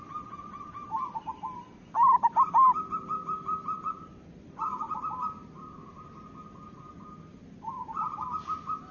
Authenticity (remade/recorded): recorded